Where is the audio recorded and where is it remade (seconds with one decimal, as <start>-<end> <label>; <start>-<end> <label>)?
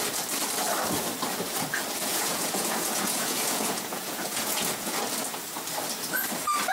0.0-2.1 recorded; 2.1-4.9 remade; 4.9-6.7 recorded